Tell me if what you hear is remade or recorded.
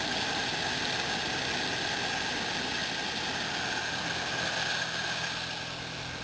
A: recorded